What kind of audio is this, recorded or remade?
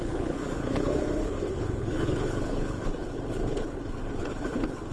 remade